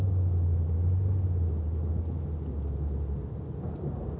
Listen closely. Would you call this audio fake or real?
real